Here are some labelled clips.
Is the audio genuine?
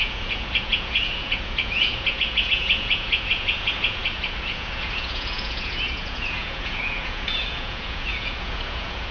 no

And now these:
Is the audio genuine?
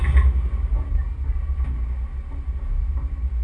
yes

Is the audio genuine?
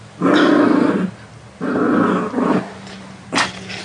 yes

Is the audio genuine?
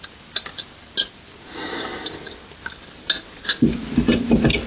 yes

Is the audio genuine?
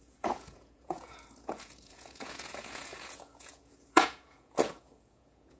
no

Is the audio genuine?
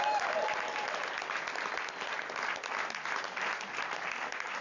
yes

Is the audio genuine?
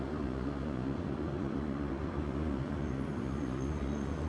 no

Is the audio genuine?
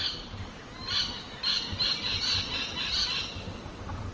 yes